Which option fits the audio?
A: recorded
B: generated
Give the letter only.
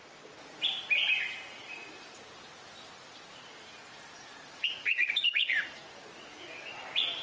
A